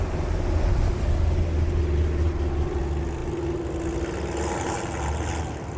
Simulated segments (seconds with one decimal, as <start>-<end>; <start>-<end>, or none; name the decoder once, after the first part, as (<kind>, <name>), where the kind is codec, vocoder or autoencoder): none